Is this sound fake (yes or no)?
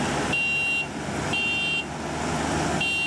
no